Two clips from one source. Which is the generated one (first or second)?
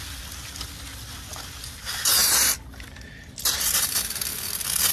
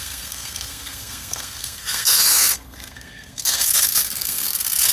second